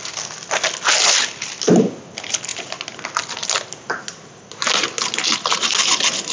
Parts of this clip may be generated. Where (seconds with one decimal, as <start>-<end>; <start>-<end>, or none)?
none